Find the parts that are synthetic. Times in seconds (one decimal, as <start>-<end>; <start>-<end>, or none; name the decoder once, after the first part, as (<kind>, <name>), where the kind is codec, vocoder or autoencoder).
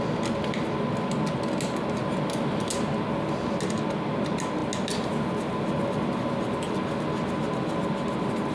none